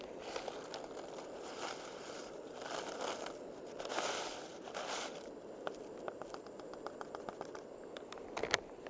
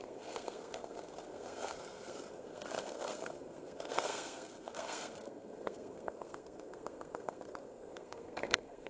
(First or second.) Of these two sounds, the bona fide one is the first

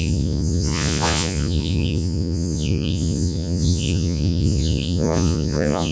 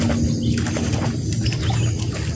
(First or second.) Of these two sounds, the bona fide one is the second